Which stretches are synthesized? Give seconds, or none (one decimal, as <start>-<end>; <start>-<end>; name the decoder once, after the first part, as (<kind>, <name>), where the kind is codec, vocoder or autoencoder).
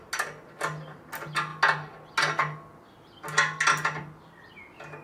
none